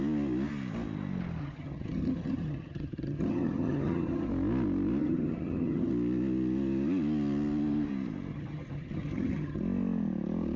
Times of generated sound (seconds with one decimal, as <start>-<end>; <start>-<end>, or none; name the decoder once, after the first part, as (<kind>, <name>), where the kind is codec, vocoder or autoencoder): 1.4-4.3 (vocoder, HiFi-GAN); 5.0-5.9; 8.3-9.6